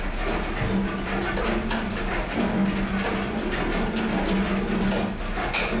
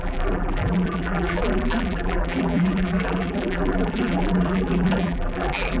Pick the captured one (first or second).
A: first